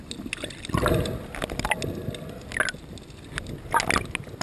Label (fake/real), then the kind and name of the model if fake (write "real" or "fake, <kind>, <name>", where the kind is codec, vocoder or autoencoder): real